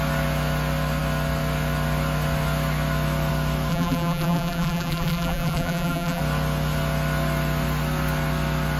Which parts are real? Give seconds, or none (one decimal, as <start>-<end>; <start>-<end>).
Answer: 0.0-3.7; 6.2-8.8